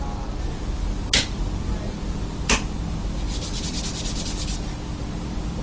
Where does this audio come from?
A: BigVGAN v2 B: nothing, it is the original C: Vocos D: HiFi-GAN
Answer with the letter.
B